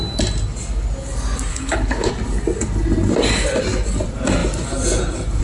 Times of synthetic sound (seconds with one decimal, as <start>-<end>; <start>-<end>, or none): 1.5-2.1